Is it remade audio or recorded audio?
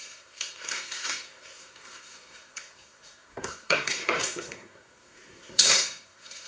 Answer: remade